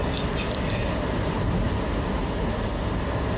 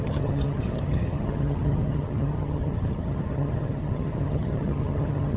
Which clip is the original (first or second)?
first